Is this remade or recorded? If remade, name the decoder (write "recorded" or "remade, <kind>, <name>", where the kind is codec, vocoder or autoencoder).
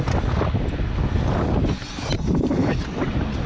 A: recorded